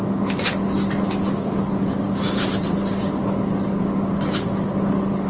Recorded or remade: recorded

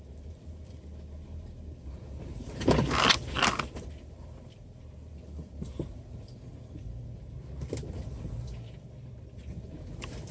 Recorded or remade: recorded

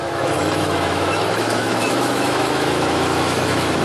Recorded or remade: remade